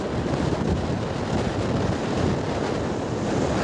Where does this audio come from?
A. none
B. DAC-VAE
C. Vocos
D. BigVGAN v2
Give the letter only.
A